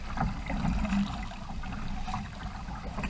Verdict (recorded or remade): recorded